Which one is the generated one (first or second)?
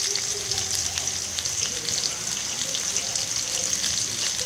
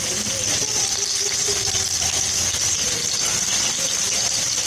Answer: second